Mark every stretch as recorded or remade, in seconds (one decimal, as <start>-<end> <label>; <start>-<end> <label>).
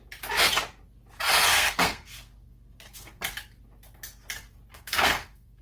0.0-1.5 recorded; 1.5-3.2 remade; 3.2-4.7 recorded; 4.7-5.6 remade